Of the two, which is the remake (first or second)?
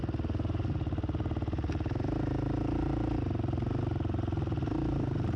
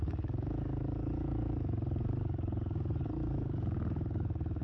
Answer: second